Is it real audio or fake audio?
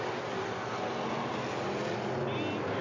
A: real